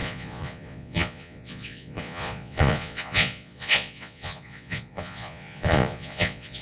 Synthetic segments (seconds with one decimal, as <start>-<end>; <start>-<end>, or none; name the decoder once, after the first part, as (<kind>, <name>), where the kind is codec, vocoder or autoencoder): 0.0-6.6 (vocoder, Vocos)